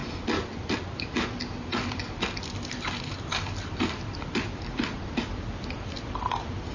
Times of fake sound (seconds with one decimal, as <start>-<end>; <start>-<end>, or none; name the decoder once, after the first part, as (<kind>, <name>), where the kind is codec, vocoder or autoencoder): 0.0-6.7 (vocoder, BigVGAN v2)